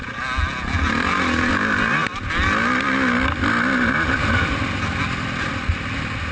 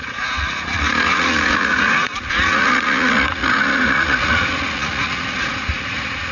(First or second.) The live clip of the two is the first